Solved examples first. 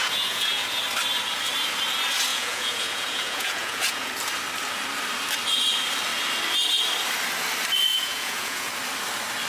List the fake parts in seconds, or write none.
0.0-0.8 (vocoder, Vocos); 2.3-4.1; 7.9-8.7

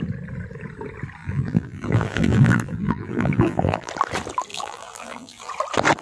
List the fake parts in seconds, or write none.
1.2-3.9 (vocoder, BigVGAN v2); 4.5-5.5

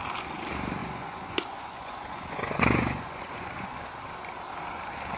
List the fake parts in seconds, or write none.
0.8-3.9 (vocoder, Vocos)

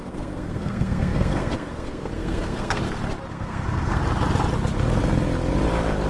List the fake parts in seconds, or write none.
0.0-2.8 (codec, SNAC); 3.3-4.0

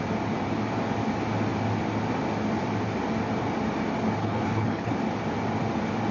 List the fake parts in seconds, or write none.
4.2-4.9 (codec, HILCodec)

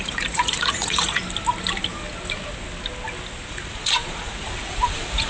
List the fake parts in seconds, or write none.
0.0-1.2 (vocoder, Vocos); 3.5-5.3

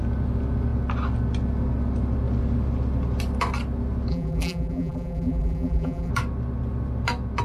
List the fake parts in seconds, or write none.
4.1-6.1 (vocoder, BigVGAN v2)